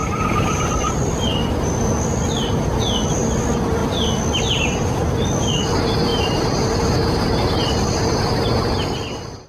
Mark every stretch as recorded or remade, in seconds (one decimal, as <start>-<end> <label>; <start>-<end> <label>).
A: 0.0-0.5 remade; 0.5-6.1 recorded; 6.1-7.5 remade; 7.5-9.5 recorded

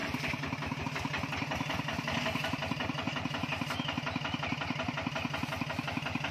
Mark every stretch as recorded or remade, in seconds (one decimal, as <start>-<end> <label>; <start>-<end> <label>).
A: 0.0-6.3 recorded

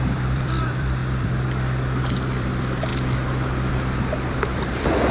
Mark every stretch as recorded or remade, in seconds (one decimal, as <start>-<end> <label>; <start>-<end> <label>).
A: 0.0-1.0 remade; 1.0-2.0 recorded; 2.0-2.9 remade; 2.9-3.7 recorded; 3.7-5.1 remade

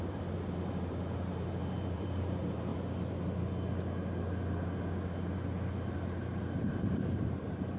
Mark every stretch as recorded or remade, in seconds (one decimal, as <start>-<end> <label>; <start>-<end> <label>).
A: 0.0-2.7 remade; 2.7-6.6 recorded; 6.6-7.8 remade

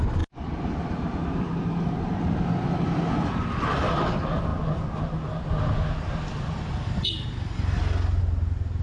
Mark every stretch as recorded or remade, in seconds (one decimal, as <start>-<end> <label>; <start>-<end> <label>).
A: 0.0-8.8 recorded

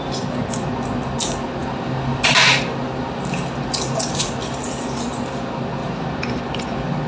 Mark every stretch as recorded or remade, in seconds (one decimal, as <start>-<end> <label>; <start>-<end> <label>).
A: 0.0-1.6 recorded; 1.6-2.6 remade; 2.6-3.0 recorded; 3.0-4.6 remade; 4.6-5.8 recorded; 5.8-6.4 remade; 6.4-7.1 recorded

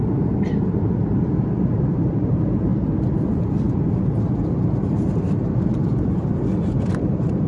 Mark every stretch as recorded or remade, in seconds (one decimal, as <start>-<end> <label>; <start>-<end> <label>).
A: 0.0-0.6 recorded; 0.6-2.7 remade; 2.7-4.1 recorded; 4.1-7.5 remade